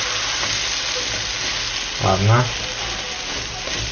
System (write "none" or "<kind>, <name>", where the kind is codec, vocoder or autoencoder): none